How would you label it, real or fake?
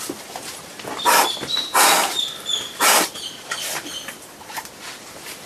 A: fake